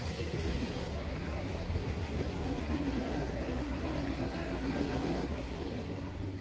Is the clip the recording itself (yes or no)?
no